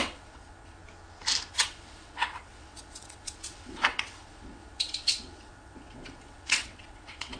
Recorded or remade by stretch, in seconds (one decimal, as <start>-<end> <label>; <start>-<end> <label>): 0.0-0.8 remade; 0.8-1.5 recorded; 1.5-7.4 remade